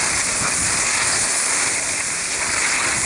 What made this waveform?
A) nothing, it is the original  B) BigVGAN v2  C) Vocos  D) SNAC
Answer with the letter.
A